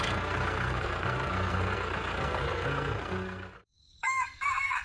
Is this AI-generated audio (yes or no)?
yes